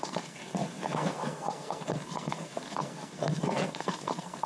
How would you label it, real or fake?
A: fake